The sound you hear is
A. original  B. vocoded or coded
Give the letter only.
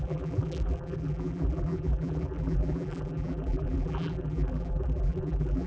B